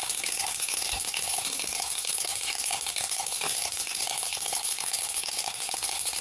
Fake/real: fake